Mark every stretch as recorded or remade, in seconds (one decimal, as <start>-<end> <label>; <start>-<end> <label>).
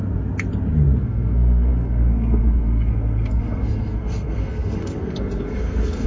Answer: 0.0-1.0 recorded; 1.0-6.1 remade